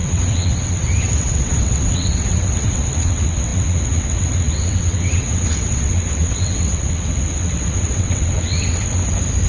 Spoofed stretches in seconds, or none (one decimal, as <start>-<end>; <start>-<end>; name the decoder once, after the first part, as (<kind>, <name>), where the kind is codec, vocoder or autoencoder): 0.0-8.8 (vocoder, WaveNeXt)